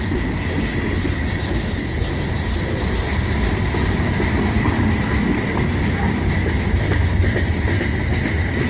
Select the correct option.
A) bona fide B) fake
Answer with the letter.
A